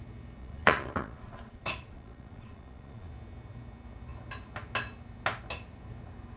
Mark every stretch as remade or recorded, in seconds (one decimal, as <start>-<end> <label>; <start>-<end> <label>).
0.0-0.4 recorded; 0.4-3.1 remade; 3.1-6.4 recorded